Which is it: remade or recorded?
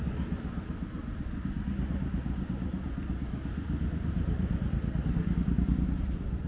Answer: recorded